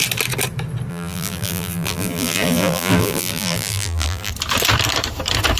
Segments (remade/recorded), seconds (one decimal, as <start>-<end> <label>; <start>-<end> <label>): 0.0-0.9 recorded; 0.9-4.3 remade; 4.3-5.6 recorded